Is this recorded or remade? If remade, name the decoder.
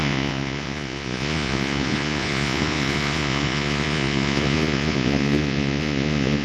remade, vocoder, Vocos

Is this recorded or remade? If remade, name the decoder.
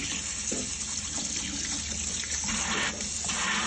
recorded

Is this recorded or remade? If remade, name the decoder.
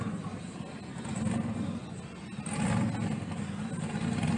recorded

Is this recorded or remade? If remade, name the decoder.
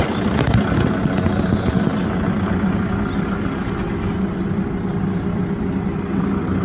recorded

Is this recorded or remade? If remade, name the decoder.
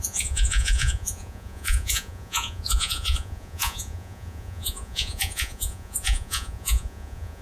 remade, vocoder, Vocos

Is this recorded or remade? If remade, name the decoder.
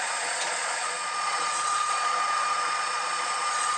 remade, vocoder, Vocos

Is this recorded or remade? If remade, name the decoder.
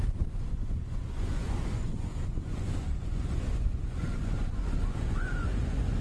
remade, vocoder, Vocos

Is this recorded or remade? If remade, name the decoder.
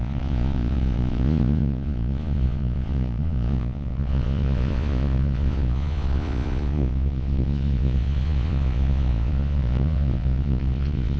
remade, vocoder, Vocos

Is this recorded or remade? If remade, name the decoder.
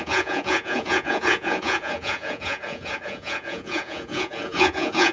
remade, vocoder, Vocos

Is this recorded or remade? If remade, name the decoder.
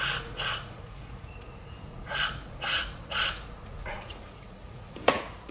remade, vocoder, Vocos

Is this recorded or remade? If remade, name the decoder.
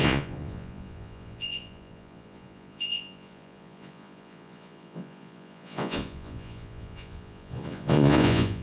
remade, vocoder, Vocos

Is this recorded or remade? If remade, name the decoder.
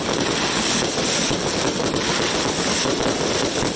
recorded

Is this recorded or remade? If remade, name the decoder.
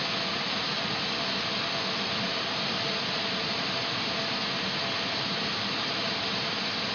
recorded